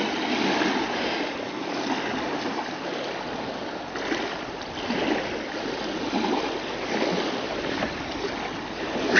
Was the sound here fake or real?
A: real